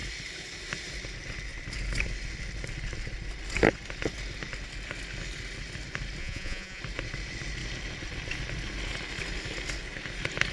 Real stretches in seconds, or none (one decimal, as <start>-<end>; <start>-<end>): 0.0-6.2; 6.8-10.5